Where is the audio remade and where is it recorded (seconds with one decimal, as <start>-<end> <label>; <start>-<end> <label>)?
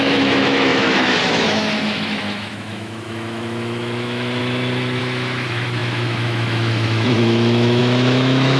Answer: 0.0-4.4 remade; 4.4-5.0 recorded; 5.0-8.6 remade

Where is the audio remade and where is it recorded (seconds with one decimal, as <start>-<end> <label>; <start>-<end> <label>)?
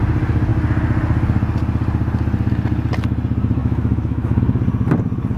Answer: 0.0-3.6 recorded; 3.6-4.4 remade; 4.4-5.4 recorded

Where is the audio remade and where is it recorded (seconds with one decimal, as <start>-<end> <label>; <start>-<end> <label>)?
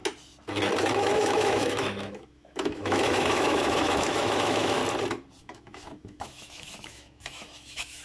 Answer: 0.0-0.8 recorded; 0.8-4.8 remade; 4.8-5.4 recorded; 5.4-8.0 remade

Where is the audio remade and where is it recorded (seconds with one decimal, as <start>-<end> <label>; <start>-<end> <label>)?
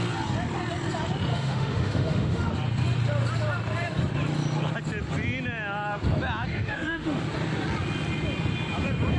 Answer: 0.0-1.3 recorded; 1.3-2.5 remade; 2.5-6.5 recorded; 6.5-7.2 remade; 7.2-9.2 recorded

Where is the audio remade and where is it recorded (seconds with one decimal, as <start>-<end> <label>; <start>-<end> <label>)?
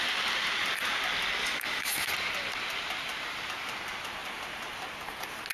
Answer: 0.0-1.4 recorded; 1.4-2.1 remade; 2.1-5.5 recorded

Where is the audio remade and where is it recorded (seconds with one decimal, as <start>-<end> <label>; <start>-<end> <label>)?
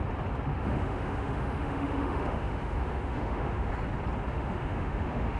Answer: 0.0-0.5 recorded; 0.5-3.7 remade; 3.7-4.3 recorded; 4.3-5.4 remade